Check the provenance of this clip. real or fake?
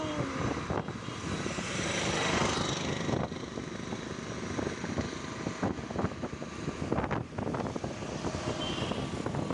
real